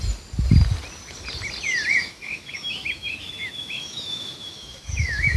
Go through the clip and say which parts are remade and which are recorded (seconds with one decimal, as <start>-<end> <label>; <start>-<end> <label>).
0.0-2.0 recorded; 2.0-5.4 remade